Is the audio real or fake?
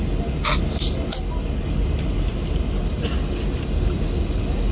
real